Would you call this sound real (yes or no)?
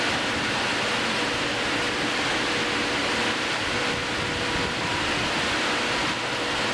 yes